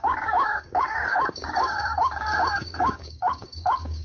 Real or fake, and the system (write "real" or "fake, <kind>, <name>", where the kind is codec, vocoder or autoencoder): fake, codec, DAC